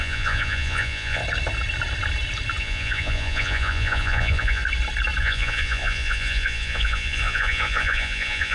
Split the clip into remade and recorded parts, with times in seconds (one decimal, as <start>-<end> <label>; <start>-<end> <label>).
0.0-1.2 remade; 1.2-2.6 recorded; 2.6-4.6 remade; 4.6-5.2 recorded; 5.2-8.5 remade